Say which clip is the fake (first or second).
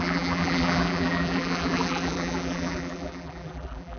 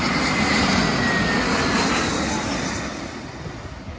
first